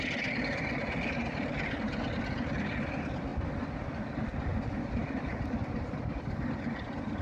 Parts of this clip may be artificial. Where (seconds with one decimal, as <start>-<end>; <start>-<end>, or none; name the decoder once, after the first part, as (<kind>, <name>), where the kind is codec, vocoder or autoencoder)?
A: 0.8-1.9 (vocoder, BigVGAN v2)